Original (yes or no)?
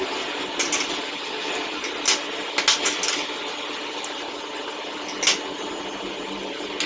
yes